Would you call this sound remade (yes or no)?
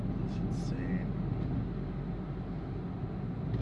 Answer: no